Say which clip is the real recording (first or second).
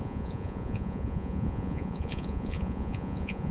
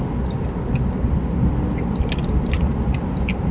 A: second